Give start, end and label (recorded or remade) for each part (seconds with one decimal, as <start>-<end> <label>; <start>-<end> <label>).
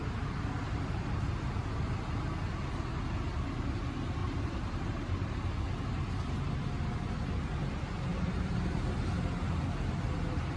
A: 0.0-4.2 recorded; 4.2-5.4 remade; 5.4-8.1 recorded; 8.1-9.1 remade; 9.1-10.6 recorded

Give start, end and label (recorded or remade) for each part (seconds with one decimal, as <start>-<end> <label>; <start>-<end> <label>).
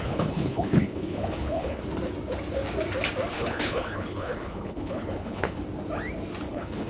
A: 0.0-1.8 remade; 1.8-3.3 recorded; 3.3-5.6 remade; 5.6-6.5 recorded; 6.5-6.9 remade